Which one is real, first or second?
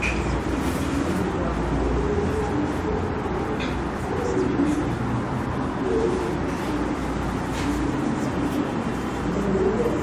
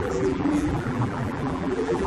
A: first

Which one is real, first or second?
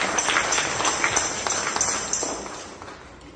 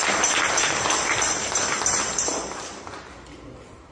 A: first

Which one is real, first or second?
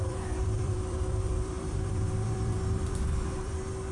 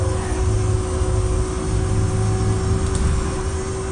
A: second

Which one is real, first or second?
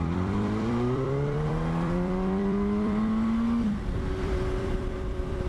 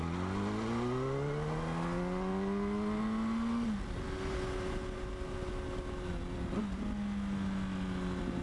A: second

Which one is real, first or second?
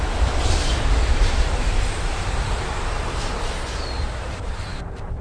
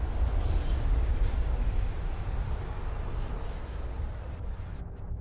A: second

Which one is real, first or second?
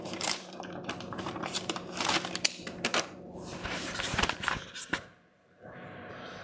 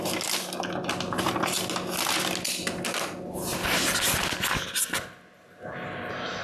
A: second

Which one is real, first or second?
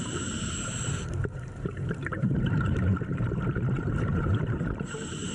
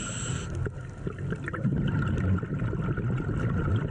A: second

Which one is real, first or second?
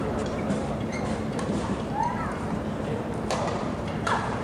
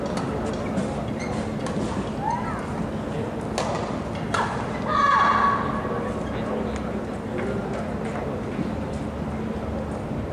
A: second